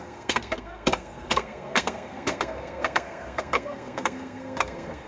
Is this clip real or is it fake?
fake